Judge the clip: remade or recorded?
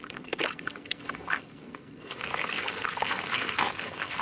remade